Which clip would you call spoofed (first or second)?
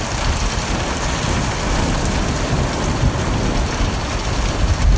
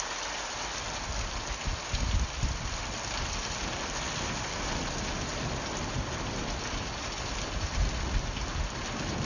first